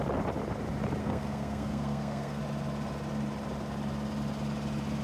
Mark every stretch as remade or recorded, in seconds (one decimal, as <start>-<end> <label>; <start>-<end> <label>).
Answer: 0.0-1.0 recorded; 1.0-2.4 remade; 2.4-5.0 recorded